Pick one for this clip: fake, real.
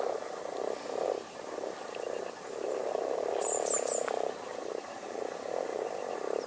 real